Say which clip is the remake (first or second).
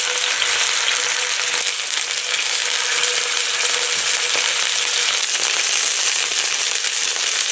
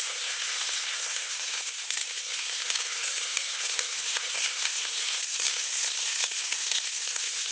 second